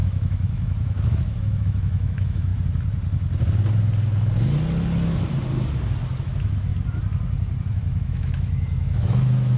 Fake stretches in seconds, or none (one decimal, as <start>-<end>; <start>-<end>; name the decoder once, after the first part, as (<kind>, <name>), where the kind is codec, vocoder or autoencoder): 0.0-2.5 (autoencoder, DAC-VAE); 6.2-6.7; 7.7-9.6